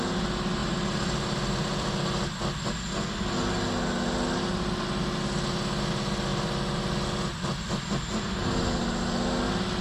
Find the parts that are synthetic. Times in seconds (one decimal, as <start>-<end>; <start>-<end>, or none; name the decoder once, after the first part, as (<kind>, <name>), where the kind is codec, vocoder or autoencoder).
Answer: 0.6-2.0 (vocoder, BigVGAN v2)

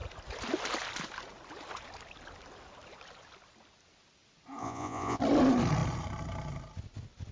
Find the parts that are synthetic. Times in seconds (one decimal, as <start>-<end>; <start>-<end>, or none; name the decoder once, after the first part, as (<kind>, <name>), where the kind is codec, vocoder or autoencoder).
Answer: 4.6-5.2 (vocoder, Vocos)

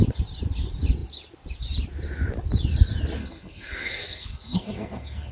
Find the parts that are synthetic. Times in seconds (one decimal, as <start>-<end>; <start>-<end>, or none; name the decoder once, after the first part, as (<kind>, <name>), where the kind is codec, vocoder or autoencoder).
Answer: 3.2-5.3 (codec, SNAC)

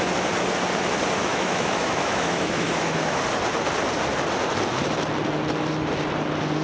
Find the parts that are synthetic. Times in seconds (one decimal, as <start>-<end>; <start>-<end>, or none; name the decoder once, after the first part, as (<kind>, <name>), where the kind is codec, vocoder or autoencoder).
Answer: 1.2-3.2 (autoencoder, DAC-VAE)

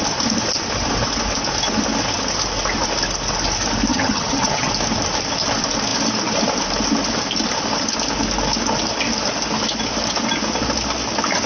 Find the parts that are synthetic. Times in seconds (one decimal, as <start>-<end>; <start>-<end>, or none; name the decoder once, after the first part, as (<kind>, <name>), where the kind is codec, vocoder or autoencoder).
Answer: 3.9-4.7 (vocoder, HiFi-GAN)

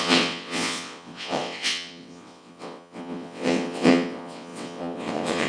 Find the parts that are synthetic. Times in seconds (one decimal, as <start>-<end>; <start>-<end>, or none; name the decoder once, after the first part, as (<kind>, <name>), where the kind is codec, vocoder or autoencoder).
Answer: 0.0-5.5 (vocoder, WaveNeXt)